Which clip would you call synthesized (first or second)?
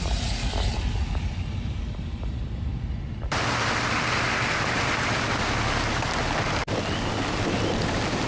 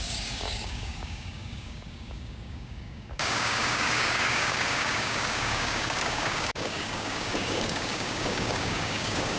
second